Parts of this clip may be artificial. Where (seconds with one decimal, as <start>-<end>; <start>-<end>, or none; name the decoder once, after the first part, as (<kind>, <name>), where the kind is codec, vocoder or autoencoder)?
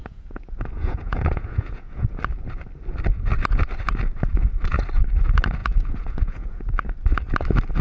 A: 0.0-2.2 (vocoder, Vocos); 5.6-6.7